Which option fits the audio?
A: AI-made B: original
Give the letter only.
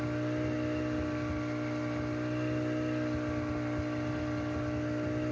B